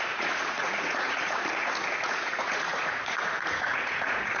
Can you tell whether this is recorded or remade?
remade